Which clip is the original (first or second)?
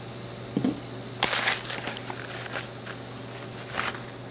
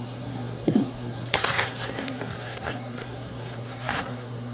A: first